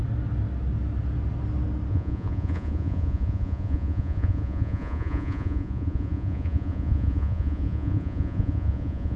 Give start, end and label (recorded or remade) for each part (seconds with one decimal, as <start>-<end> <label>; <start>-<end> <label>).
0.0-1.9 recorded; 1.9-9.2 remade